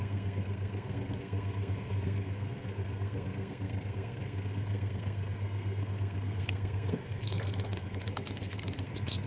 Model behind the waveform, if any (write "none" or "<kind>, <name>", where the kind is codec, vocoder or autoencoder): codec, SNAC